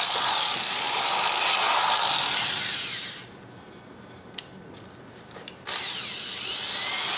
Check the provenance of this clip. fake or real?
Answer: real